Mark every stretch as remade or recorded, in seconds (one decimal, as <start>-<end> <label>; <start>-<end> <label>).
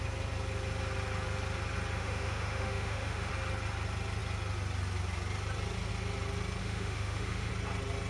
0.0-2.0 recorded; 2.0-3.3 remade; 3.3-6.6 recorded; 6.6-7.5 remade; 7.5-8.1 recorded